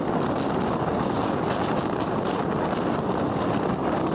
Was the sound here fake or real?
real